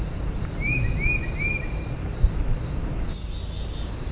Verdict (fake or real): real